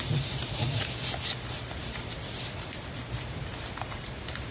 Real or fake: fake